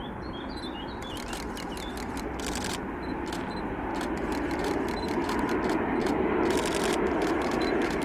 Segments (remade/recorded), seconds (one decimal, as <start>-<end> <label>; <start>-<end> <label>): 0.0-8.0 recorded